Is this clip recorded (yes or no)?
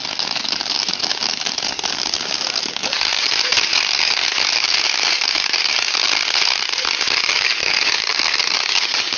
no